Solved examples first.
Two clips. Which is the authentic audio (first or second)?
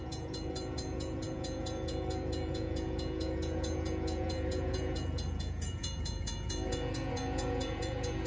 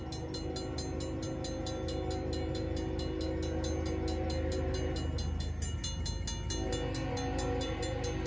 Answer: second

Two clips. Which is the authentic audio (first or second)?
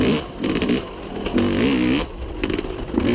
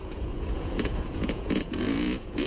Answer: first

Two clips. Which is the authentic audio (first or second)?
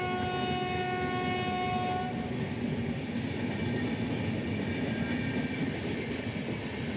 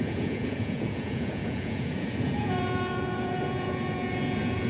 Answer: first